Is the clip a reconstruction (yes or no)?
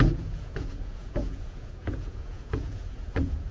yes